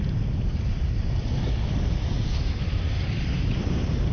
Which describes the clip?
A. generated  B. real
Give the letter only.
A